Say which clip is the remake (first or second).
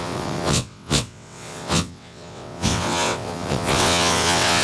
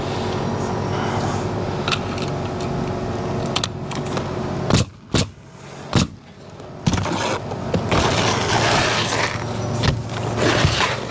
first